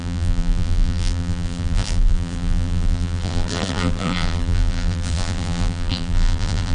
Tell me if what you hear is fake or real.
fake